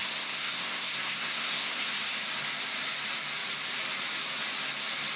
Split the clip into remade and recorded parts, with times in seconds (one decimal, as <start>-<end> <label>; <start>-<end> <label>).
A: 0.0-1.8 remade; 1.8-5.2 recorded